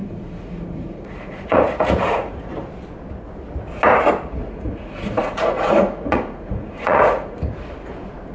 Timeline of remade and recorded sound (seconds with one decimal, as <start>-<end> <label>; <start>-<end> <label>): 0.0-2.5 remade; 2.5-4.4 recorded; 4.4-7.4 remade; 7.4-8.3 recorded